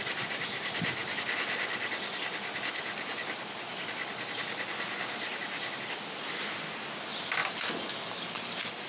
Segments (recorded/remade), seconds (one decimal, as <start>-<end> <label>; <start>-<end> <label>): 0.0-8.9 recorded